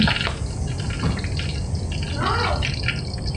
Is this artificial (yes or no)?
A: no